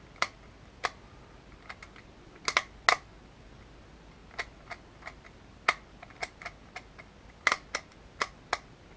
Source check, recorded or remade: recorded